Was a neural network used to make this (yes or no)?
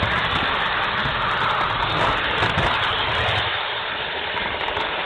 yes